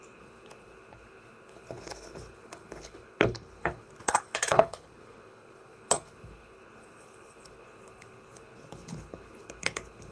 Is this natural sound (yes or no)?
no